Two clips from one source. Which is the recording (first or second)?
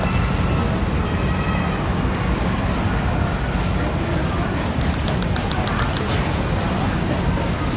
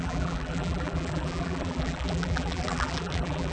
first